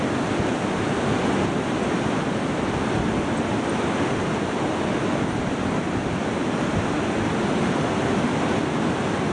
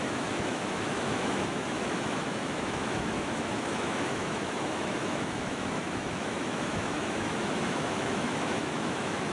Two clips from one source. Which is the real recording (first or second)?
first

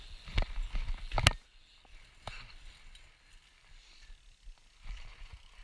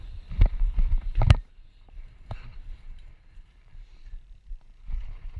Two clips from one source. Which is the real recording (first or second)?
first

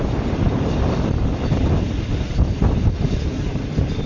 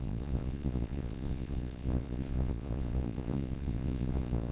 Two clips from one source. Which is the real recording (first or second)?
first